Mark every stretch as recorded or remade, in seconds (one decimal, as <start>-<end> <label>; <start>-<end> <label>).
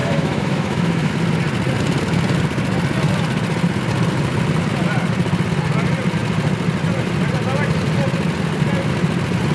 0.0-1.1 remade; 1.1-9.5 recorded